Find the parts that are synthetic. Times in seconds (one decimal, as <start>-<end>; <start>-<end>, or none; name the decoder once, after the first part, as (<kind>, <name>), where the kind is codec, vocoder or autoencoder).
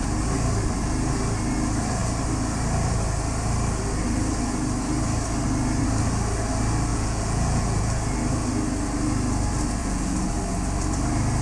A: 6.9-7.8 (vocoder, Vocos); 9.8-10.3